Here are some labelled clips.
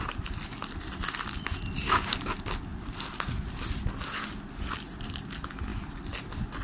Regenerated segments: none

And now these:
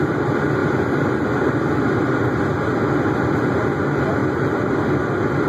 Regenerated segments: 4.2-4.9 (vocoder, BigVGAN v2)

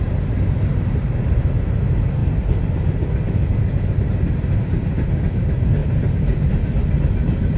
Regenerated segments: none